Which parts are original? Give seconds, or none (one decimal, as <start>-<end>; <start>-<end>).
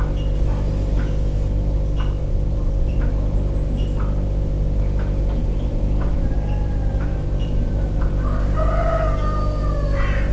0.0-2.2; 3.1-5.4; 8.1-10.3